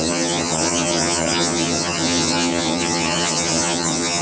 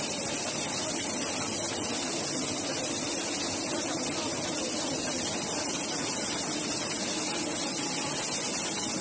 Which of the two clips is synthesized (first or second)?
first